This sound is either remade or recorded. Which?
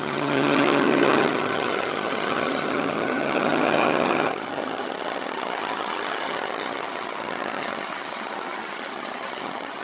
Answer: remade